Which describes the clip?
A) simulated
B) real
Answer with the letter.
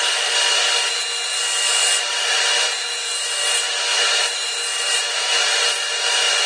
B